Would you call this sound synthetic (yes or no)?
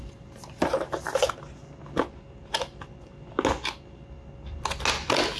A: no